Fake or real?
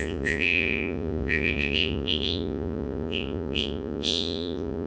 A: fake